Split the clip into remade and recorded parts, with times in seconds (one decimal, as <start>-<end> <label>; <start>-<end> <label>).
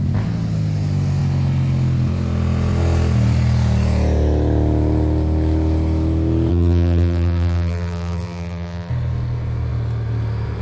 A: 0.0-6.5 recorded; 6.5-8.9 remade; 8.9-10.6 recorded